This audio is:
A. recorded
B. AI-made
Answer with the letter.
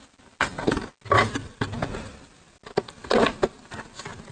A